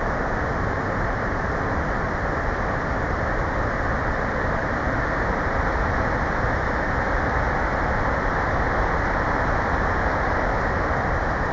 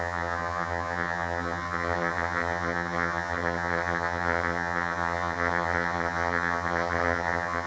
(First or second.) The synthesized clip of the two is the second